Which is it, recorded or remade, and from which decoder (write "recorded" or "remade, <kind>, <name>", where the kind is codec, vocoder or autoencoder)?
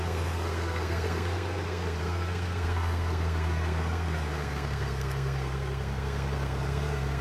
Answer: remade, codec, SNAC